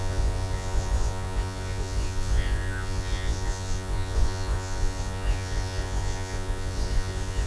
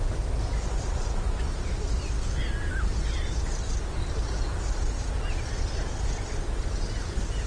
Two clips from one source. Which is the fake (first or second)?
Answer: first